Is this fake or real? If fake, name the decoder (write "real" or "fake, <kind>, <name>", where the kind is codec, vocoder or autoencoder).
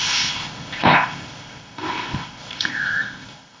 fake, codec, ZipCodec